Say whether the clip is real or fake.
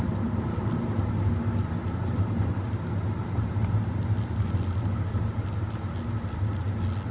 real